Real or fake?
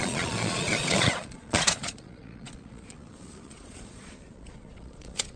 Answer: fake